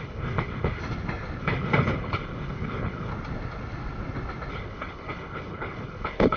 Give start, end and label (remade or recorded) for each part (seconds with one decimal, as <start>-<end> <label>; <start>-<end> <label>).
0.0-0.8 remade; 0.8-1.4 recorded; 1.4-3.1 remade; 3.1-4.5 recorded; 4.5-6.4 remade